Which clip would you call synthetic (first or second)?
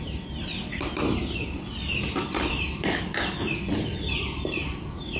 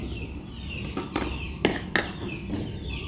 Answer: first